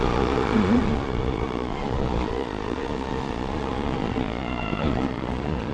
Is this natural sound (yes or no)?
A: no